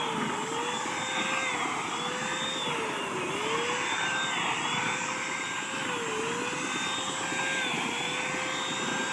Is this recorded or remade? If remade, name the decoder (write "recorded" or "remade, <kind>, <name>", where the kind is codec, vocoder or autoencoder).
recorded